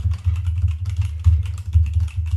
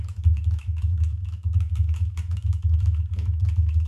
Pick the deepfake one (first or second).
second